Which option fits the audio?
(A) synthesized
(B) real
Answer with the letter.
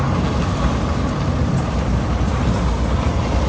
B